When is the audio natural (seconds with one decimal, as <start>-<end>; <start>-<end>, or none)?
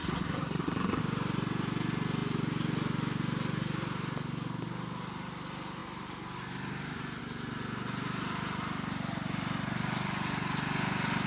1.0-11.3